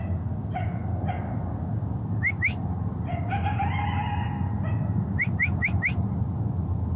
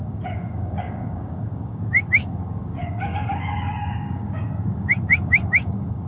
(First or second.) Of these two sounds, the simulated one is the second